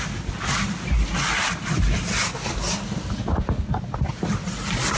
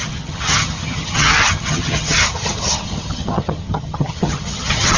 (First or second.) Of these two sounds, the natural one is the first